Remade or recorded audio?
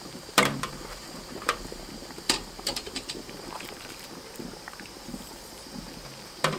remade